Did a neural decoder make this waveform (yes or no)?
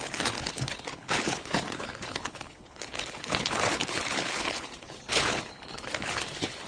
yes